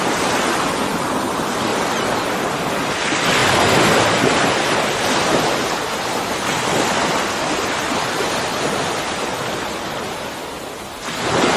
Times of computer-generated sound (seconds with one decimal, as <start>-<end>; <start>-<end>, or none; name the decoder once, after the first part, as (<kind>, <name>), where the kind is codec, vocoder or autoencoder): none